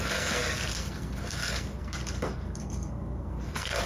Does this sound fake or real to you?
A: fake